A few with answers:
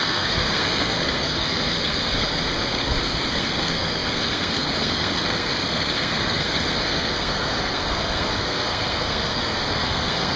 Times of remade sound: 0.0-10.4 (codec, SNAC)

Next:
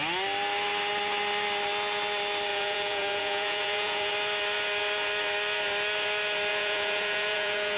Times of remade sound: 2.5-4.1 (vocoder, Vocos); 6.5-7.8

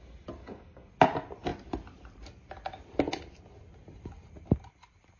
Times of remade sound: 0.4-0.9 (codec, DAC)